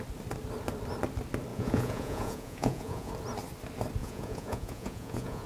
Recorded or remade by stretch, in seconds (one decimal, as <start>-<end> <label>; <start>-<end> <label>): 0.0-1.5 recorded; 1.5-3.1 remade; 3.1-4.0 recorded; 4.0-5.5 remade